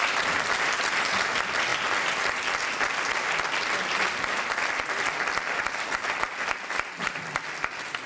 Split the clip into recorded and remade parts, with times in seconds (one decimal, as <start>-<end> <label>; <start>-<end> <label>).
0.0-8.1 recorded